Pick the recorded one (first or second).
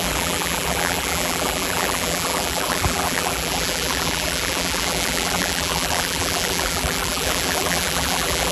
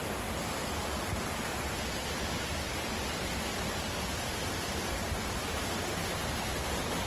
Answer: second